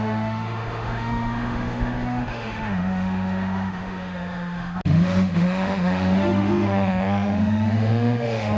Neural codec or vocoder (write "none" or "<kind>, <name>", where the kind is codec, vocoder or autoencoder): autoencoder, DAC-VAE